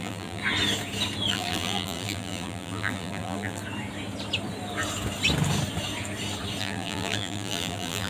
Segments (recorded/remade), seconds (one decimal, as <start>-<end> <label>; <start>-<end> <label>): 0.0-0.4 remade; 0.4-1.3 recorded; 1.3-3.6 remade; 3.6-6.6 recorded; 6.6-8.1 remade